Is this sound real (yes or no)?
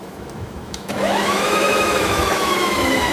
no